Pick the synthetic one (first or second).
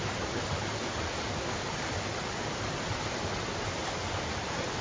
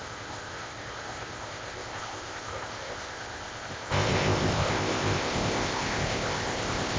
second